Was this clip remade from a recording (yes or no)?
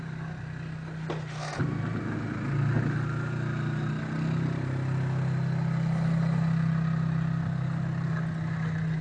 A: no